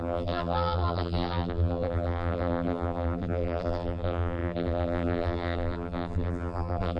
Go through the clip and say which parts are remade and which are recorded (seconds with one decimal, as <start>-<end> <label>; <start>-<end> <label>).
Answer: 0.0-7.0 remade